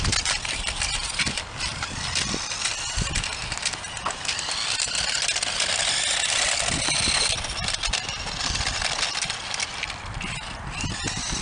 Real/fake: real